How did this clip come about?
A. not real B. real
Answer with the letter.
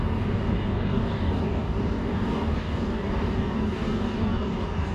A